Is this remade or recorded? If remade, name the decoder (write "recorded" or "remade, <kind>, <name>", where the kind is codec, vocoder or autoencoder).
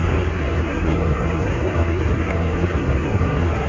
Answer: remade, codec, SNAC